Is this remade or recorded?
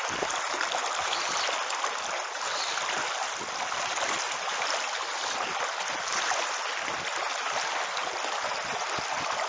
recorded